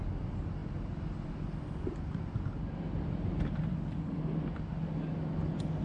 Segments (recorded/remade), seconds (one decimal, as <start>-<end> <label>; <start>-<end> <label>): 0.0-3.7 recorded; 3.7-4.2 remade; 4.2-5.8 recorded